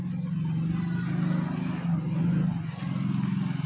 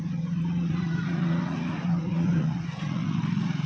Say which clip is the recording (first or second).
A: first